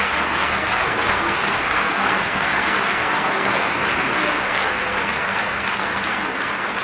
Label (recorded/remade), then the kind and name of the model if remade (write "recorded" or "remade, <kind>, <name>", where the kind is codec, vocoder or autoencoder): remade, codec, SNAC